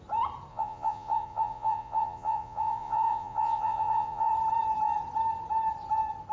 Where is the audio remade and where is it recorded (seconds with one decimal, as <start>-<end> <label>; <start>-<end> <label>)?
0.0-0.5 recorded; 0.5-4.3 remade; 4.3-6.3 recorded